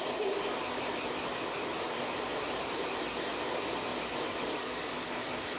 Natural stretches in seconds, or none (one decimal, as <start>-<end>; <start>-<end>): 0.0-5.6